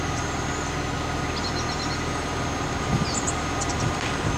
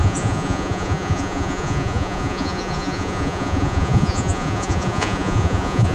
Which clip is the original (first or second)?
first